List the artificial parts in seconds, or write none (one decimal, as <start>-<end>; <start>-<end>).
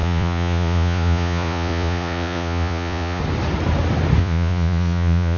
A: 0.0-3.2; 4.2-5.4